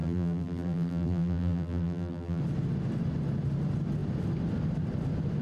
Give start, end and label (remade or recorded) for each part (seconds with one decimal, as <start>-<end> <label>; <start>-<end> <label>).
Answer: 0.0-2.4 remade; 2.4-5.4 recorded